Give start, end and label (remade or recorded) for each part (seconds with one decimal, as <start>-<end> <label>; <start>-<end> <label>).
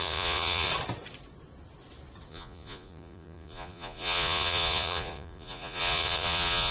0.0-0.7 remade; 0.7-2.3 recorded; 2.3-6.7 remade